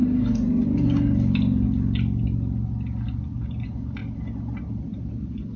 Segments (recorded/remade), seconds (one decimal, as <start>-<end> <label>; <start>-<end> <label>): 0.0-3.1 recorded; 3.1-4.0 remade; 4.0-4.6 recorded; 4.6-5.6 remade